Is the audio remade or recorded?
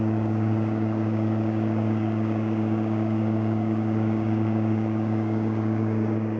remade